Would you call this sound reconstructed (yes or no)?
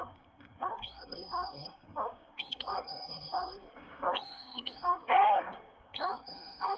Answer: yes